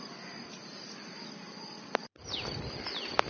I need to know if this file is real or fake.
real